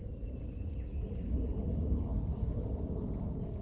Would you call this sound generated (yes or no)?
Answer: no